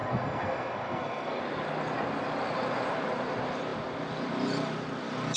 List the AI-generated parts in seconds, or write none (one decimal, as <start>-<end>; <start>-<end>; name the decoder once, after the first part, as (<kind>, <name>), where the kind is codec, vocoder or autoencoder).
0.0-1.4 (codec, SNAC)